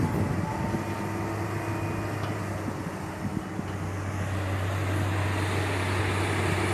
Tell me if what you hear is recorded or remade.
recorded